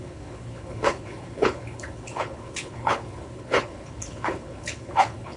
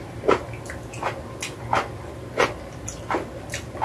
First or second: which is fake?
first